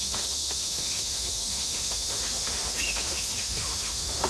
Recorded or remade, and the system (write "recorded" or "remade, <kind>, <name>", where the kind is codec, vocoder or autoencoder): remade, autoencoder, DAC-VAE